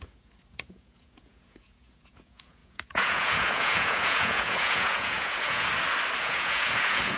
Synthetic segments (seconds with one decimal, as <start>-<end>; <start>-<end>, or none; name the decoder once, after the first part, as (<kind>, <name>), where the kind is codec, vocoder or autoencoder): 0.0-5.7 (vocoder, Vocos); 6.2-7.2